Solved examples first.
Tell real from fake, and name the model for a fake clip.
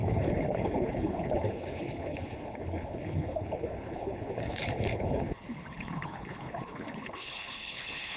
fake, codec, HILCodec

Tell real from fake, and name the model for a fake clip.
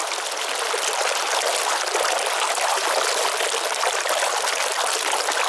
real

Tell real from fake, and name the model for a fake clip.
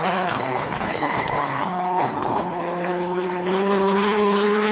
fake, codec, HILCodec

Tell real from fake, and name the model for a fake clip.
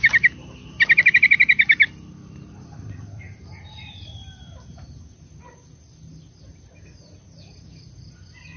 real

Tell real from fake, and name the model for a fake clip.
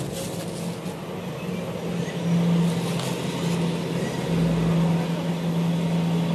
real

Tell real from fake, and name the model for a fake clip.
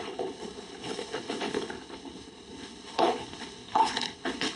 fake, codec, HILCodec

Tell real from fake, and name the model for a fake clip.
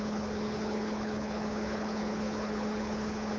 fake, codec, HILCodec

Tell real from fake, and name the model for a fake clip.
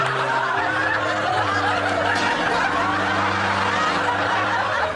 real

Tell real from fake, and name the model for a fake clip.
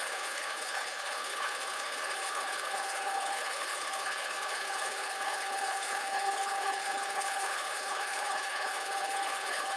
fake, codec, HILCodec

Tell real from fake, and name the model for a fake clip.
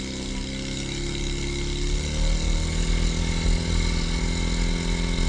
real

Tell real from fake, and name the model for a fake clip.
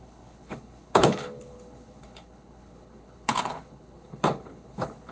fake, codec, HILCodec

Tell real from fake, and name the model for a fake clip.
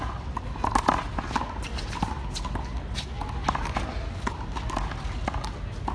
real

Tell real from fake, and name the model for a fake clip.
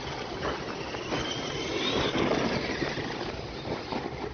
real